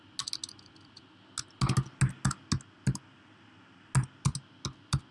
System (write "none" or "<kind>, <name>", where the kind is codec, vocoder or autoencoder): none